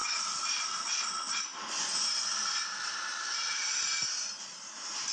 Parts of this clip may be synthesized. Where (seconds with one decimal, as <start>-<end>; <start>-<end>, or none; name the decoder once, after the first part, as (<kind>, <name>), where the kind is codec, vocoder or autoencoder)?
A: none

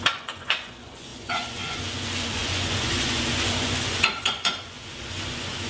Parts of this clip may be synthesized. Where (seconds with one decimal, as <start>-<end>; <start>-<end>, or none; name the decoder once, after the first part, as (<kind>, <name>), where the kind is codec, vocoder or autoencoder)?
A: 0.0-5.7 (vocoder, Vocos)

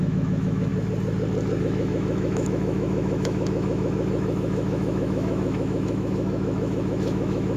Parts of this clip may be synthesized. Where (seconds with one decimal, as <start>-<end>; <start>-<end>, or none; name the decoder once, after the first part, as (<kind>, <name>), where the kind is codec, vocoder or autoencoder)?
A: 0.0-0.7 (autoencoder, DAC-VAE); 1.6-7.6

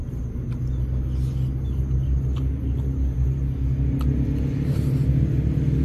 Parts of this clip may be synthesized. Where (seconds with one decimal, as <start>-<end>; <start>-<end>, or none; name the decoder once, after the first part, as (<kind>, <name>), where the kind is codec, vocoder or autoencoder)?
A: none

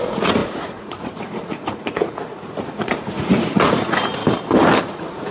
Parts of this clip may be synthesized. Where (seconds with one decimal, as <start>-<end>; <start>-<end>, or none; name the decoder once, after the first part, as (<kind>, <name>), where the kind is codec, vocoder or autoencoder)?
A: 0.0-4.2 (vocoder, Vocos); 4.8-5.3

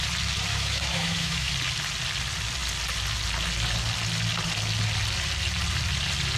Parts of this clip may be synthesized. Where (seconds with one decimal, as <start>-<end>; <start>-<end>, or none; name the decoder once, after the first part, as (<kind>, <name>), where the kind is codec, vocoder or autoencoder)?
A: 0.5-1.5 (autoencoder, DAC-VAE)

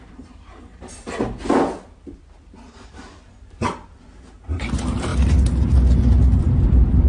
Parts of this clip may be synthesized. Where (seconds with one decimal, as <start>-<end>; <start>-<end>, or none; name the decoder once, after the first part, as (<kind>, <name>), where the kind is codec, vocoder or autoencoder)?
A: 0.0-0.7 (vocoder, BigVGAN v2); 2.7-5.1; 6.4-7.1